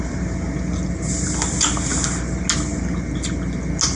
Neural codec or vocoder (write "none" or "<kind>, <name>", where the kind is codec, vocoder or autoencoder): none